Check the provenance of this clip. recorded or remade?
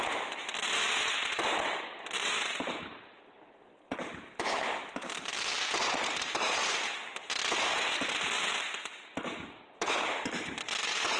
recorded